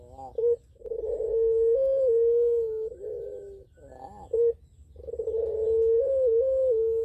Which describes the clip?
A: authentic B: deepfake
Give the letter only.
A